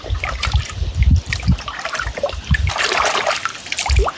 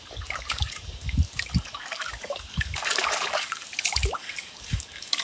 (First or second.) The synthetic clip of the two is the second